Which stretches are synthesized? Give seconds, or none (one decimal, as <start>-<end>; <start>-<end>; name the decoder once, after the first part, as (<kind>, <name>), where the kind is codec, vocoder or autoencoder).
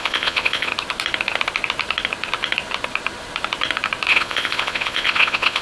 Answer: 0.0-0.7 (vocoder, Vocos); 4.1-5.6